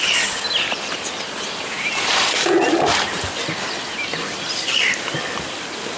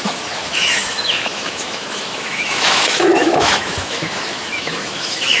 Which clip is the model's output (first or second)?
second